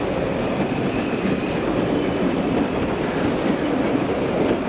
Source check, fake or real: real